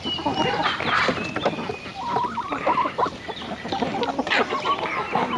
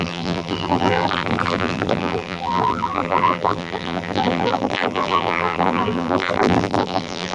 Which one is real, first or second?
first